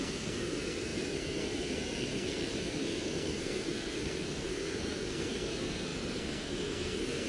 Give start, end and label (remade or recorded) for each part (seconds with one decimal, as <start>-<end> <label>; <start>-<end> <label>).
0.0-7.3 remade

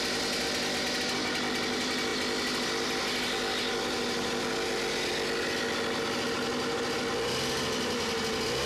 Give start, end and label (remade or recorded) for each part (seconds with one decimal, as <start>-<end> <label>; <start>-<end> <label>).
0.0-8.7 recorded

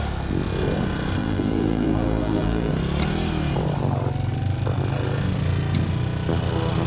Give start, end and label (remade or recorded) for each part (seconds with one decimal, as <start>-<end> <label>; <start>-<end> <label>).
0.0-1.2 recorded; 1.2-2.7 remade; 2.7-6.9 recorded

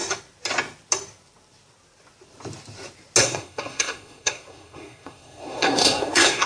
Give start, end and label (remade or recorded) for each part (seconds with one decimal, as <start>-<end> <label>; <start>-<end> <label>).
0.0-3.2 recorded; 3.2-6.5 remade

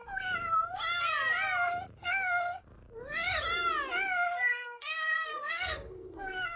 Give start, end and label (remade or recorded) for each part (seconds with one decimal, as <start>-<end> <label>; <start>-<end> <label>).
0.0-2.0 recorded; 2.0-2.6 remade; 2.6-4.5 recorded; 4.5-6.6 remade

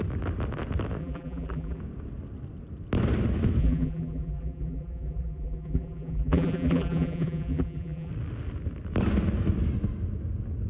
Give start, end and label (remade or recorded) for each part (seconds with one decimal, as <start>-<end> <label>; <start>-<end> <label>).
0.0-1.0 recorded; 1.0-1.8 remade; 1.8-3.6 recorded; 3.6-8.1 remade; 8.1-10.7 recorded

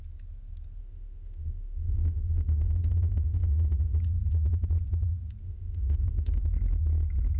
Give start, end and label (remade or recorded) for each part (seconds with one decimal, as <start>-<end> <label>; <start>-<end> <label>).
0.0-0.8 recorded; 0.8-4.0 remade; 4.0-5.4 recorded; 5.4-6.4 remade; 6.4-7.4 recorded